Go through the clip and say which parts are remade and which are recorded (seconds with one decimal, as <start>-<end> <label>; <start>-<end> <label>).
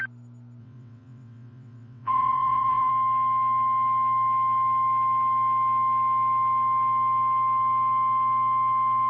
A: 0.0-0.6 recorded; 0.6-2.9 remade; 2.9-9.1 recorded